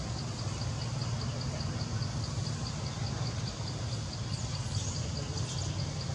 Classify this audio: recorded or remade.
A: recorded